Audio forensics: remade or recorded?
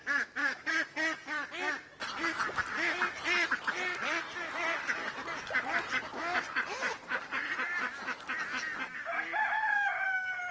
recorded